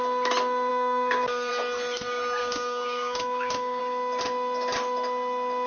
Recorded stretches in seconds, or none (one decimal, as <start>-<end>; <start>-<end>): 0.0-0.7; 1.5-2.4; 3.8-5.7